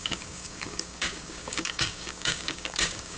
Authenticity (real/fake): fake